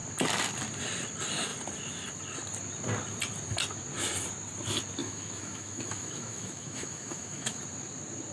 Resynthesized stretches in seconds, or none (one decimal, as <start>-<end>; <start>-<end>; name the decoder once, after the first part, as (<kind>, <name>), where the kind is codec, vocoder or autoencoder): 5.0-7.6 (autoencoder, DAC-VAE)